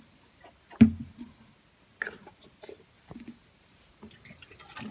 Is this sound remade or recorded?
recorded